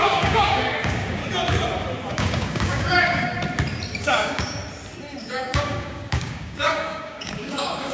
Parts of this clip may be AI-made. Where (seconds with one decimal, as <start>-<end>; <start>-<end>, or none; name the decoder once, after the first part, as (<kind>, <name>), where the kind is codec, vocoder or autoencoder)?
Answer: 0.0-1.2 (codec, DAC); 2.1-3.3; 4.0-4.6; 5.2-7.9